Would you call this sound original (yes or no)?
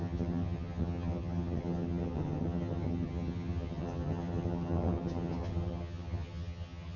no